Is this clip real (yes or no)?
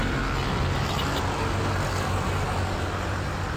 yes